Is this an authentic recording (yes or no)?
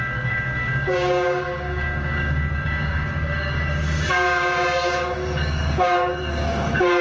no